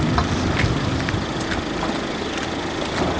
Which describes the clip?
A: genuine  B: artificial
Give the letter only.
B